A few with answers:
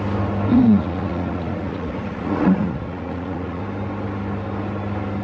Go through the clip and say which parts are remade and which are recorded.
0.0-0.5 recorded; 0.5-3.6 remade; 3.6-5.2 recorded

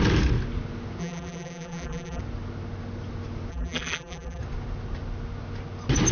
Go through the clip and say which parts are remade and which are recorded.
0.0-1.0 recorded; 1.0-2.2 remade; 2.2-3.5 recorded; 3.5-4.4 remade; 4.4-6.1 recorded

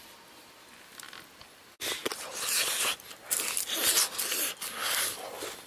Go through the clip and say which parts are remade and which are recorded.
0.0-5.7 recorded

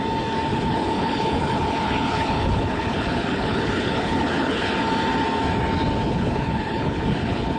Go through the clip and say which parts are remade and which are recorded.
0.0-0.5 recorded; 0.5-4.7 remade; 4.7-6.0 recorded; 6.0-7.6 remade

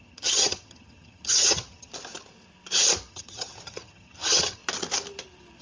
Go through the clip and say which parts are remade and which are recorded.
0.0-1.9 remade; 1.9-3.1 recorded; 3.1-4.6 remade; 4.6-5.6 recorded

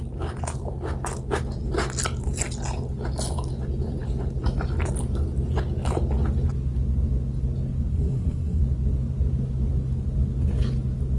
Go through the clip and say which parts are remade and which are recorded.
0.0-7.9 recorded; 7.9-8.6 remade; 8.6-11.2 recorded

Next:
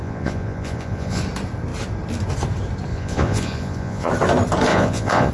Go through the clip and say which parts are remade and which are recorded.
0.0-1.2 remade; 1.2-2.9 recorded; 2.9-4.1 remade; 4.1-4.7 recorded; 4.7-5.3 remade

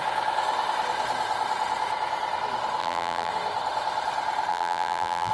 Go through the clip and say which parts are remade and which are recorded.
0.0-2.8 recorded; 2.8-3.3 remade; 3.3-4.5 recorded; 4.5-5.3 remade